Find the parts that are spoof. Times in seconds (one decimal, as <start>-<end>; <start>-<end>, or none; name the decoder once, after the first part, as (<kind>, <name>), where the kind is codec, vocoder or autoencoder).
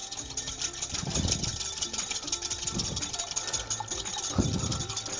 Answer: 0.0-0.5 (vocoder, Vocos)